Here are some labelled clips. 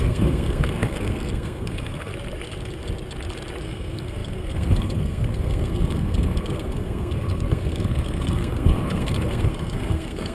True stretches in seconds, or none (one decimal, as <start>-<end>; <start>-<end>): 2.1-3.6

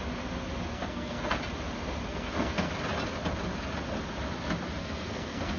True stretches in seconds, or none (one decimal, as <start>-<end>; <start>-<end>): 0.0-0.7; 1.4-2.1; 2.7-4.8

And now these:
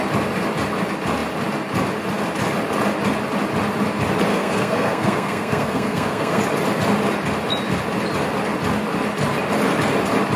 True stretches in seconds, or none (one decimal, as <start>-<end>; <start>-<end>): 0.0-4.3; 6.4-10.4

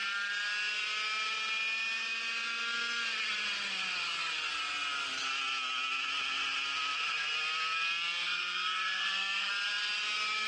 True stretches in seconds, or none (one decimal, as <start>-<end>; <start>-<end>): 0.0-8.2; 9.5-10.5

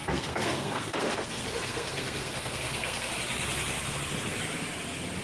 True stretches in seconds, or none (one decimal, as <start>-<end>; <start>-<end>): 3.1-5.2